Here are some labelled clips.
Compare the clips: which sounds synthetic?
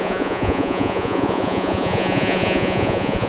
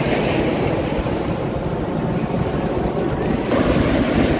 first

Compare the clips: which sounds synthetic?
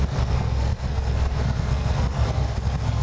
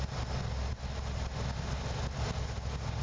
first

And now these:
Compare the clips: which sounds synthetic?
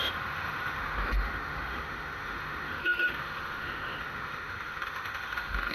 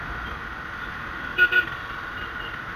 first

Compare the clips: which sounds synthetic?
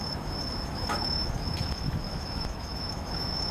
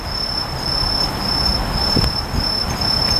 first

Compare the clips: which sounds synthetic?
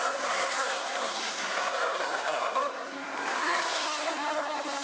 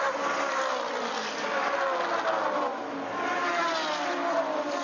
first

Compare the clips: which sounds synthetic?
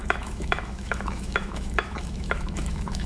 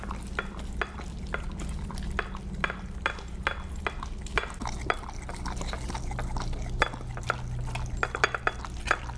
first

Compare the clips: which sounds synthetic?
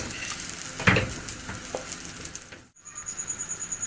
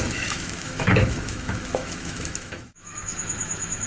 second